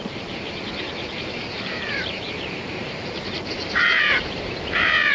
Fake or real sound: fake